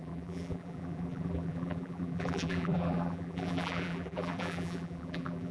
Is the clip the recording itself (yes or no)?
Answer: no